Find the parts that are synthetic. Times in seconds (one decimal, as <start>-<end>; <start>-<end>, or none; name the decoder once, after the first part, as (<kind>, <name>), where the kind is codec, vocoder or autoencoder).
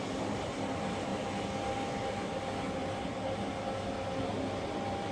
none